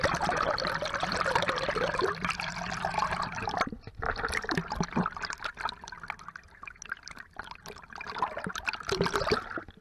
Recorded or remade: recorded